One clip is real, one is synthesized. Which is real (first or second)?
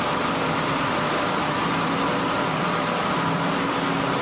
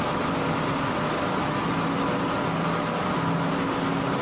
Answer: second